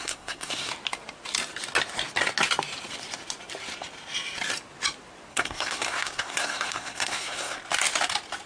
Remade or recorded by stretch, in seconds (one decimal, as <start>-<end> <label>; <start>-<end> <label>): 0.0-0.7 remade; 0.7-5.3 recorded; 5.3-7.6 remade; 7.6-8.5 recorded